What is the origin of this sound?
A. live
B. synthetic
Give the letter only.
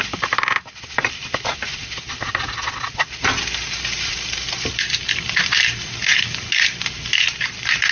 A